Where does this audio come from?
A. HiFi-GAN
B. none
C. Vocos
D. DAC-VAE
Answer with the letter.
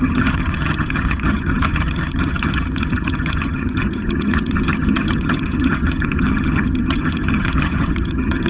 A